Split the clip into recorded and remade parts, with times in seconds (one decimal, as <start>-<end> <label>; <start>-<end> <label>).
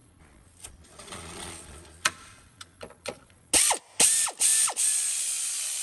0.0-3.5 remade; 3.5-5.8 recorded